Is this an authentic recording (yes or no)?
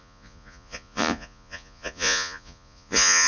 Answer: no